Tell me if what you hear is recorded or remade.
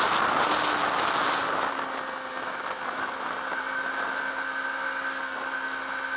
recorded